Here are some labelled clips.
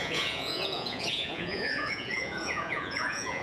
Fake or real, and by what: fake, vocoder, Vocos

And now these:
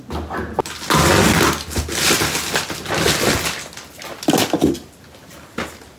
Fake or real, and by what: real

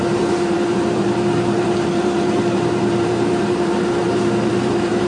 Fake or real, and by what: fake, vocoder, BigVGAN v2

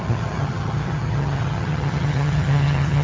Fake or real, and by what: fake, vocoder, HiFi-GAN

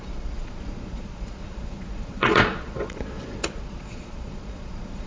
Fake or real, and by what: fake, vocoder, Vocos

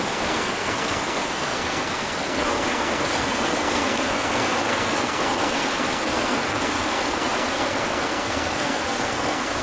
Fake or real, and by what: fake, codec, SNAC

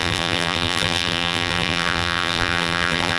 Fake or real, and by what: fake, vocoder, BigVGAN v2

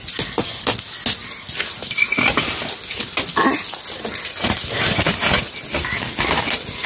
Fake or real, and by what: real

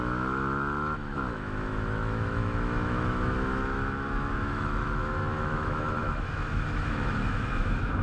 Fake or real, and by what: fake, autoencoder, DAC-VAE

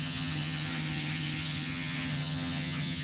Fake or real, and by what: fake, vocoder, HiFi-GAN